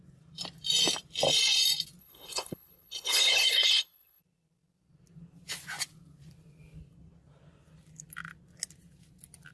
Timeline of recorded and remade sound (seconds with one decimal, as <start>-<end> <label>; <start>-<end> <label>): 0.0-2.0 recorded; 2.0-4.2 remade; 4.2-9.5 recorded